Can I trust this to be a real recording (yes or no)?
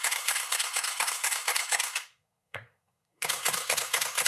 no